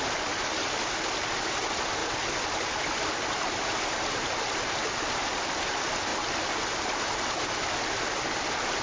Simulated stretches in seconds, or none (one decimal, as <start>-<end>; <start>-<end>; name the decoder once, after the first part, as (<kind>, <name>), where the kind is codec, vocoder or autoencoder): 2.0-3.8 (vocoder, BigVGAN v2)